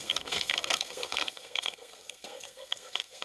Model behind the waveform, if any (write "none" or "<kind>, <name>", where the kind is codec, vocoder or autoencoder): codec, SNAC